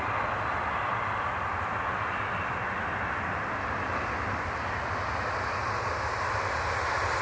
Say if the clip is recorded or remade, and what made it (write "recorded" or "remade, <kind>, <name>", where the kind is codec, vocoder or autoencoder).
recorded